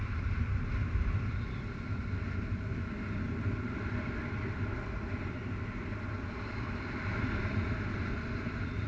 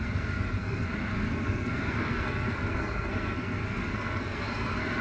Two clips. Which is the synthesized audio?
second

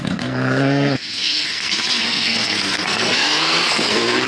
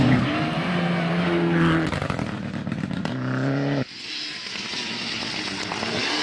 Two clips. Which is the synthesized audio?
first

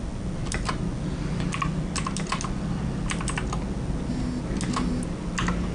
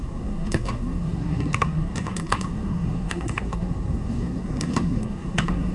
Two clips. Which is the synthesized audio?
second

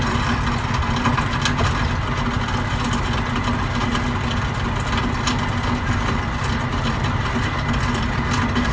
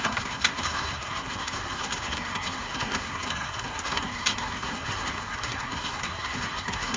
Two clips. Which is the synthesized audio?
second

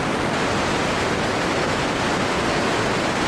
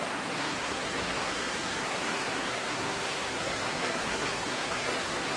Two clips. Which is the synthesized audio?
second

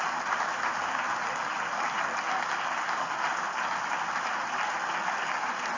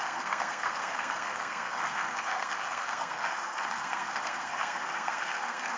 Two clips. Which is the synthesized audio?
second